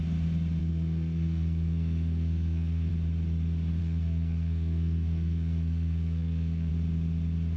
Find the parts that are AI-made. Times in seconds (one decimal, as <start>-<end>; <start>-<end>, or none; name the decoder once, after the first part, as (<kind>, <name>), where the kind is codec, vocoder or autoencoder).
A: 0.6-2.9 (codec, SNAC); 3.8-6.7